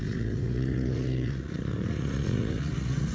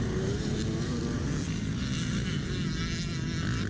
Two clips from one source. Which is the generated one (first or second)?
first